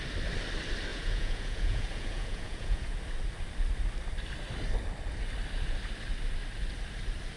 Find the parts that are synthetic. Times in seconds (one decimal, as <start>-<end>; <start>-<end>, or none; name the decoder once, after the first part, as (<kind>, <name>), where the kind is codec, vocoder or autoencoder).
0.9-2.9 (vocoder, Vocos)